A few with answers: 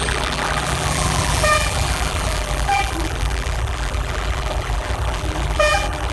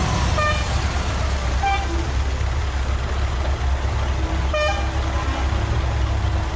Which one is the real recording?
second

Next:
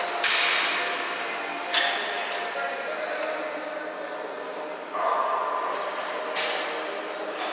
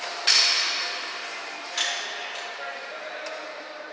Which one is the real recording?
first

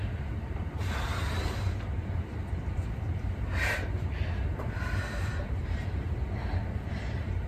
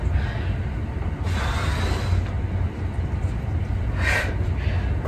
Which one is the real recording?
second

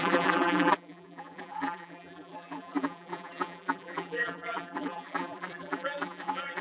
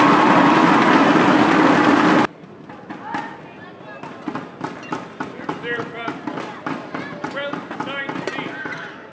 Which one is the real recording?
second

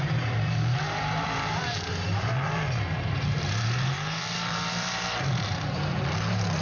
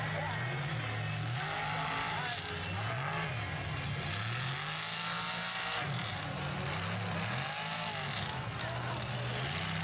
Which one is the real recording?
second